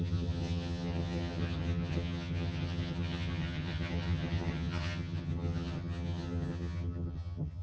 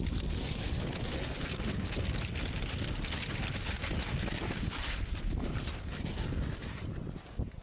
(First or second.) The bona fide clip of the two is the second